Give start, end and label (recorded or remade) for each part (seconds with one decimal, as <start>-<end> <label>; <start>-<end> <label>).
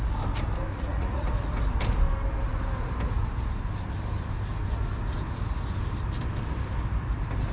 0.0-0.7 recorded; 0.7-1.3 remade; 1.3-7.5 recorded